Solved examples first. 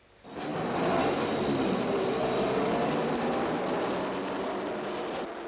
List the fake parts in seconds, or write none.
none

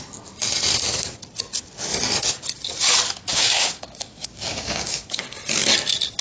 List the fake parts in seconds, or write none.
3.3-5.4

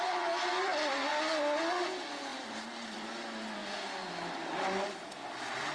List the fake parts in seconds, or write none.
2.3-3.0